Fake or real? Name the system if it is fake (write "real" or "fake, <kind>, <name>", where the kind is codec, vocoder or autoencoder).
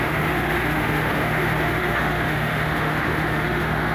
fake, autoencoder, DAC-VAE